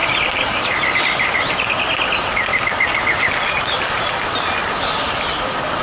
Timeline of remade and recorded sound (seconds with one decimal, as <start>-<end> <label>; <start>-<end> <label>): 0.0-5.8 recorded